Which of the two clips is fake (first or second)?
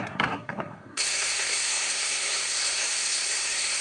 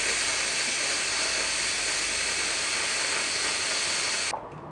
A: first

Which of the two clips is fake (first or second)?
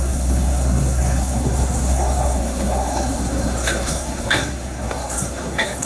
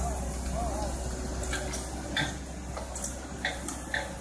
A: first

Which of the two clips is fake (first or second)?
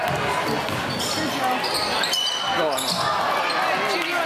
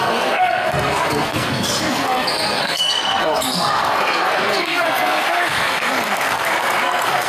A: second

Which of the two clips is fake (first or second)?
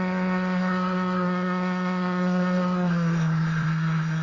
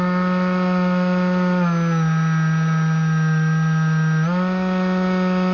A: first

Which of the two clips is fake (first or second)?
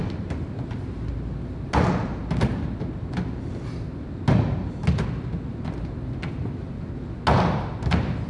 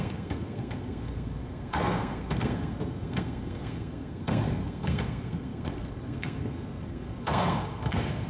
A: second